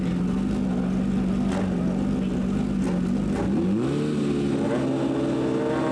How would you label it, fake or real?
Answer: real